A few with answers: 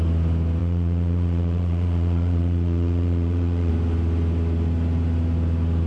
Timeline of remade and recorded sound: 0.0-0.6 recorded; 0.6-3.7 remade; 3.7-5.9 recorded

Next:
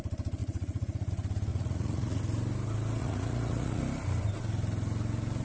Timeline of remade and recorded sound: 0.0-0.4 recorded; 0.4-1.1 remade; 1.1-1.5 recorded; 1.5-2.2 remade; 2.2-3.0 recorded; 3.0-3.8 remade; 3.8-5.4 recorded

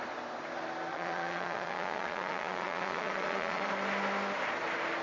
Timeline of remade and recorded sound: 0.0-0.9 recorded; 0.9-3.7 remade; 3.7-5.0 recorded

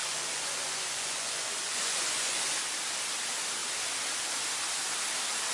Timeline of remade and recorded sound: 0.0-2.4 remade; 2.4-5.5 recorded

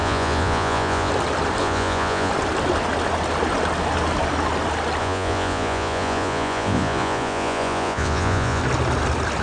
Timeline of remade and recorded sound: 0.0-1.1 remade; 1.1-1.6 recorded; 1.6-2.3 remade; 2.3-5.0 recorded; 5.0-8.6 remade; 8.6-9.4 recorded

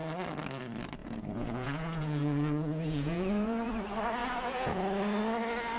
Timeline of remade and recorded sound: 0.0-1.0 recorded; 1.0-3.7 remade; 3.7-4.2 recorded; 4.2-4.8 remade; 4.8-5.8 recorded